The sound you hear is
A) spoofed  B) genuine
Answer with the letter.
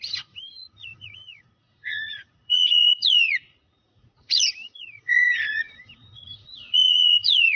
A